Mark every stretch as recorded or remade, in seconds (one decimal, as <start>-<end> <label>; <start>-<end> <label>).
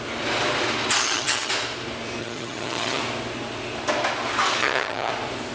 0.0-1.0 recorded; 1.0-1.5 remade; 1.5-2.2 recorded; 2.2-3.0 remade; 3.0-4.6 recorded; 4.6-5.1 remade; 5.1-5.5 recorded